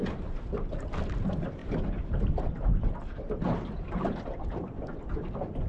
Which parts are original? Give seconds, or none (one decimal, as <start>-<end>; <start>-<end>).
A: 0.0-5.7